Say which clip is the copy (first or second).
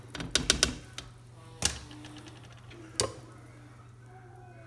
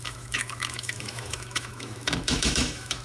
second